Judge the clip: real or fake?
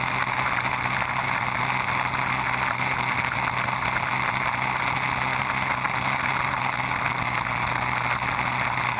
real